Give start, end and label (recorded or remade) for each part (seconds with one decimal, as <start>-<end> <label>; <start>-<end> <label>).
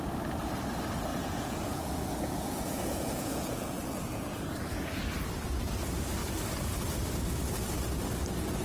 0.0-1.1 recorded; 1.1-5.0 remade; 5.0-8.6 recorded